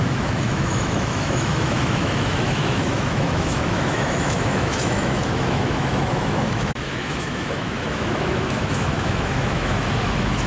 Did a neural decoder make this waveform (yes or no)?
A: yes